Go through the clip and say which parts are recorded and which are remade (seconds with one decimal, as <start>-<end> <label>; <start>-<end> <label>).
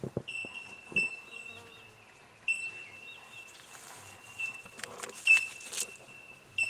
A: 0.0-6.7 recorded